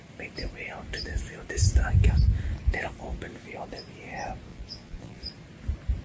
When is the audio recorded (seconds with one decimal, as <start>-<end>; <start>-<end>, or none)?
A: 0.0-4.5; 5.2-6.0

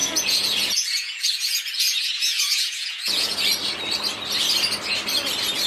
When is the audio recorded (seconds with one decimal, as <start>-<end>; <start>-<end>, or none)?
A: 3.4-5.7

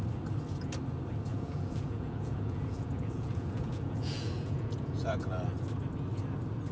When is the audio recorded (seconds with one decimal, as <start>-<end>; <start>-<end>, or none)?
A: 0.0-1.3; 5.3-6.7